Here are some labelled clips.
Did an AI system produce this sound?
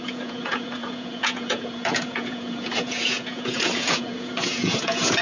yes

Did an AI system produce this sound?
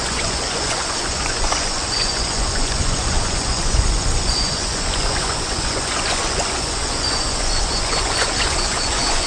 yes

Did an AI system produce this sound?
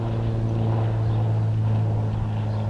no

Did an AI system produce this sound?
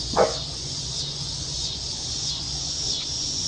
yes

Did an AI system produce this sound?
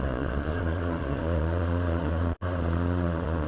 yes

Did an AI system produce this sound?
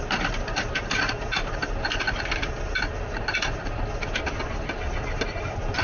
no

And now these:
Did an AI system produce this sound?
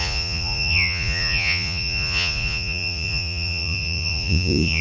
yes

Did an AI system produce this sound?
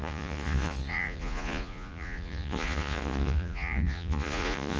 yes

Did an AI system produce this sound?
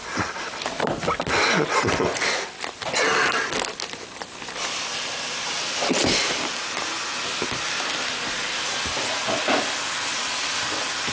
no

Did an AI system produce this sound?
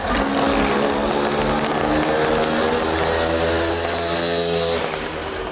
no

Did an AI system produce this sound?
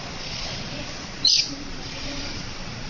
yes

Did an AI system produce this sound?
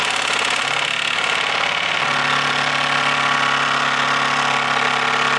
no